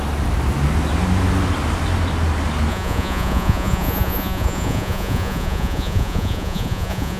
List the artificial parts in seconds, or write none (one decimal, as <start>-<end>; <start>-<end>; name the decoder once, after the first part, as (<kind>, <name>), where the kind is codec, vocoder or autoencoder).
2.7-7.2 (vocoder, Vocos)